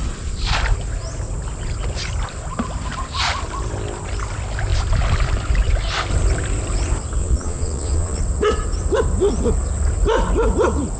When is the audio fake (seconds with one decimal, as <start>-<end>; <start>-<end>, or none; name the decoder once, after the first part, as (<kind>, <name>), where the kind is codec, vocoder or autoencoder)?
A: 7.2-8.2 (vocoder, Vocos)